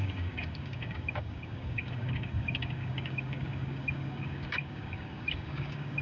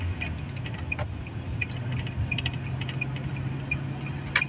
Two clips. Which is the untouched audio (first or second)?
second